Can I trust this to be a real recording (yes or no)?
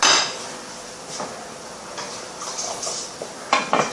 yes